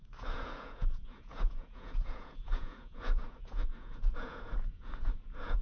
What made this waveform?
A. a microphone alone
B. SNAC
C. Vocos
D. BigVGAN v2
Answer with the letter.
C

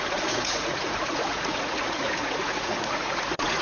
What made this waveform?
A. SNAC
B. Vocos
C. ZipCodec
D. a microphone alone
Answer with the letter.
B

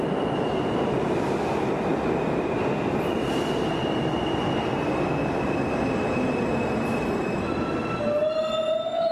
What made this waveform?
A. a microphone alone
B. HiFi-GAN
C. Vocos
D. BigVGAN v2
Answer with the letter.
A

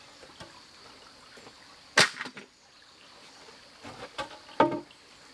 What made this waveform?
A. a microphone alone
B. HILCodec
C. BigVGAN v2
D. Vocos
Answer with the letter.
A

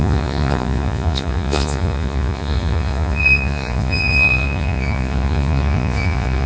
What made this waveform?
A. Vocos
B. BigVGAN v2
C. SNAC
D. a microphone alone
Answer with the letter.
A